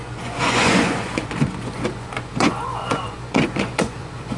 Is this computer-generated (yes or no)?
yes